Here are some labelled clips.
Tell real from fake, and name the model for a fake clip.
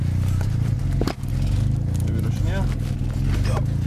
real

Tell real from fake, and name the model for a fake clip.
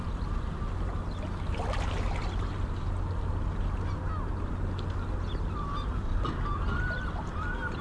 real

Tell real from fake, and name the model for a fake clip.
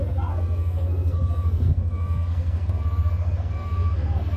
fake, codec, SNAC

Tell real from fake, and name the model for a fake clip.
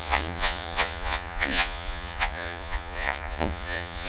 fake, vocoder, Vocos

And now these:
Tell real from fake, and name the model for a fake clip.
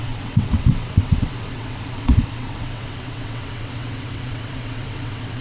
fake, vocoder, WaveNeXt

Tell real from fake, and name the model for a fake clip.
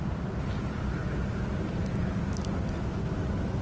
real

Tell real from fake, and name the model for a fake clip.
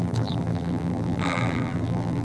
fake, vocoder, BigVGAN v2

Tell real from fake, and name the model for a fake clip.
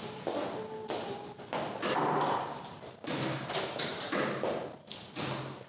real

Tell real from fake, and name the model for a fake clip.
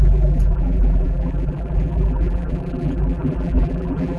fake, vocoder, BigVGAN v2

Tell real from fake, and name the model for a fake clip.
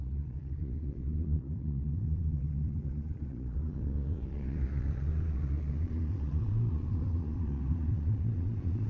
fake, vocoder, Vocos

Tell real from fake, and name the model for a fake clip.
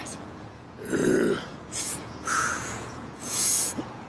fake, vocoder, Vocos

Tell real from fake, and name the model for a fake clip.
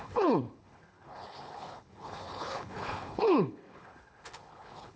fake, codec, HILCodec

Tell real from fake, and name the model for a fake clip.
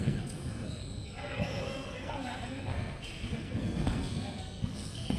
fake, codec, SNAC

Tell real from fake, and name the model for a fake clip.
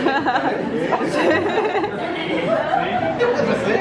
real